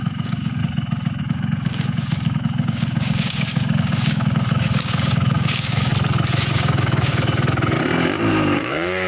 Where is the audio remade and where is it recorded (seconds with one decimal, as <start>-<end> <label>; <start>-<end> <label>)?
0.0-0.6 remade; 0.6-1.2 recorded; 1.2-5.9 remade; 5.9-6.5 recorded; 6.5-7.1 remade; 7.1-8.3 recorded; 8.3-9.1 remade